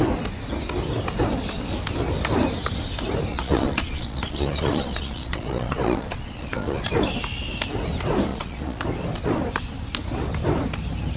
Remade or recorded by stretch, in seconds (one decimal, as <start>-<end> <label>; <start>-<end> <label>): 0.0-3.3 recorded; 3.3-6.8 remade; 6.8-8.3 recorded; 8.3-8.8 remade; 8.8-11.2 recorded